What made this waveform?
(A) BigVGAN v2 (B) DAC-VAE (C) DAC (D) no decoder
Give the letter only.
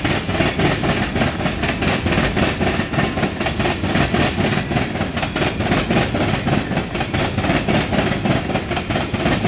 D